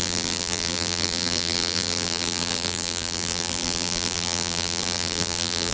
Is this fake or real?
fake